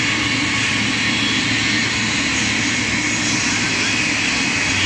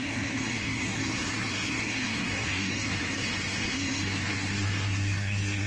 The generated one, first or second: second